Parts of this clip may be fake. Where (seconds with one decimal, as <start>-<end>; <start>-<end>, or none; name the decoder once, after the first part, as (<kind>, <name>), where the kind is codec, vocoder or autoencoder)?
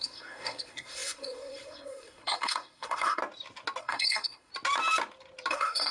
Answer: 0.0-3.2 (codec, SNAC); 3.8-4.5; 5.5-5.9